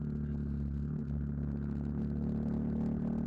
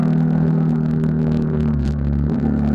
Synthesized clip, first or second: second